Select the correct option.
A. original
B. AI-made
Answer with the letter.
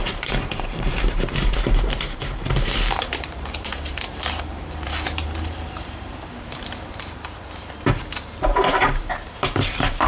B